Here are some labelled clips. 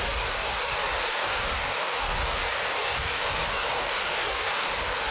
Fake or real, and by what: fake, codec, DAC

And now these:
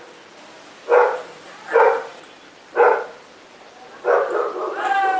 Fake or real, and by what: real